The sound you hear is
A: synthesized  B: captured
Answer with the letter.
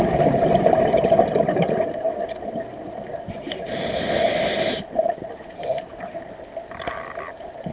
A